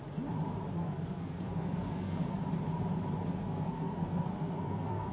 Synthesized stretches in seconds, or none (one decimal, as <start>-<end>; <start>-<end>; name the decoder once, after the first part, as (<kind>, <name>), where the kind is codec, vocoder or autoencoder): 0.8-2.4 (codec, SNAC); 3.4-5.1

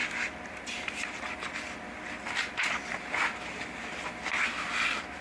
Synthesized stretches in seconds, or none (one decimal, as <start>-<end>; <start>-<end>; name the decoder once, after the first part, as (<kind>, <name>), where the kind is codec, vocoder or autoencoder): none

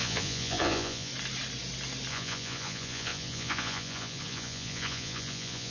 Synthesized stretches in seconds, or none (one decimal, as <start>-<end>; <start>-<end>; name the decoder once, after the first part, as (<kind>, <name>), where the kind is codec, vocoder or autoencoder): 0.0-1.1 (vocoder, Vocos); 2.1-5.7

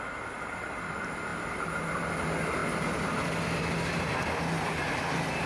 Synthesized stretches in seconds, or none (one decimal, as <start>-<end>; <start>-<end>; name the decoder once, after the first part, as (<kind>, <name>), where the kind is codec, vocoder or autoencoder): none

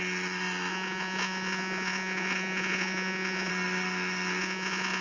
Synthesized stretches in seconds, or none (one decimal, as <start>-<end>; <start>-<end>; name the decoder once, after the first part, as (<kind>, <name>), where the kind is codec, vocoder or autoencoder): 0.7-3.5 (vocoder, Vocos); 4.4-5.0

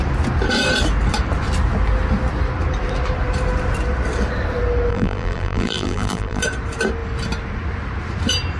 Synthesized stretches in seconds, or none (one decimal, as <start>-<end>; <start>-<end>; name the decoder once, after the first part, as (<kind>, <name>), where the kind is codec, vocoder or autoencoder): 4.9-6.4 (vocoder, BigVGAN v2)

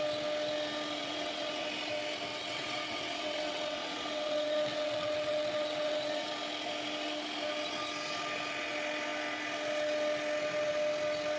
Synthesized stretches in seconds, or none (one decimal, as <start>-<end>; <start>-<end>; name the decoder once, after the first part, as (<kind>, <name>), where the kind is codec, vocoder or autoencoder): 1.0-1.7 (vocoder, WaveNeXt); 2.3-6.3